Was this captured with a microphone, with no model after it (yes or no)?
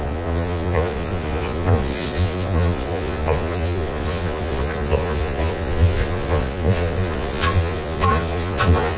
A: no